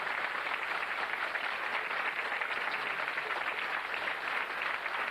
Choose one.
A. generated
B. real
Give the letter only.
B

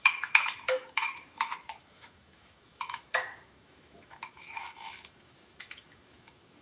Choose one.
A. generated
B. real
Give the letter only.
A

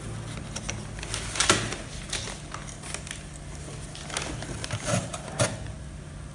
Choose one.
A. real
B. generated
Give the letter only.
A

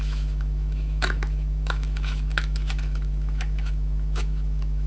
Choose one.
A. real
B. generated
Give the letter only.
B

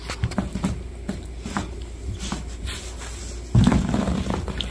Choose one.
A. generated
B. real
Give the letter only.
B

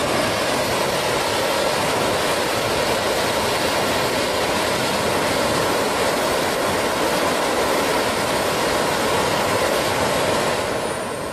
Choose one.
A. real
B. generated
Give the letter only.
A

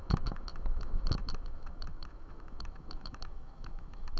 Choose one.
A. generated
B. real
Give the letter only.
A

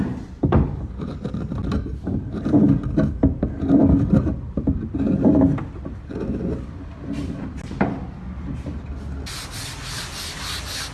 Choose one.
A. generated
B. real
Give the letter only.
B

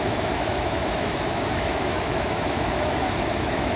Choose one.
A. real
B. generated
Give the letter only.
B